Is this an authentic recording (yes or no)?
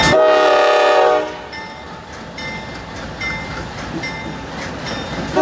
yes